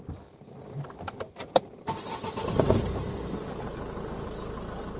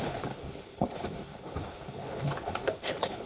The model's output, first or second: second